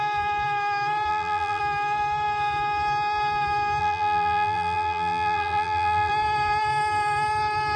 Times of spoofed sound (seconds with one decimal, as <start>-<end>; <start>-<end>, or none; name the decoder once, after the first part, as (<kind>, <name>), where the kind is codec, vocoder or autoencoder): 1.1-1.6 (vocoder, BigVGAN v2); 3.8-6.1